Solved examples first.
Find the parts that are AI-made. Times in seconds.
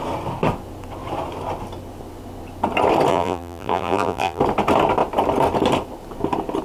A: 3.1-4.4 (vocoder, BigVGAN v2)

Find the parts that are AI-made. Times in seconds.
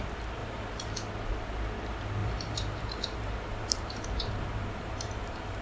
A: 0.4-0.9 (vocoder, BigVGAN v2); 2.2-5.6